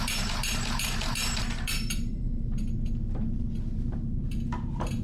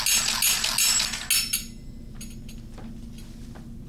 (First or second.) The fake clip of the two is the first